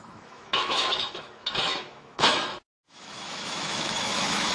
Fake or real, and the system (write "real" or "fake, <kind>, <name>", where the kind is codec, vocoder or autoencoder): fake, autoencoder, DAC-VAE